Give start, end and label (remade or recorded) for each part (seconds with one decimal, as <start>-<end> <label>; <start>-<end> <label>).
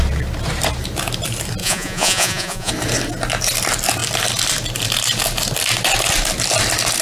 0.0-1.6 recorded; 1.6-2.7 remade; 2.7-7.0 recorded